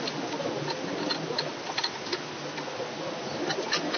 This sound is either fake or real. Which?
real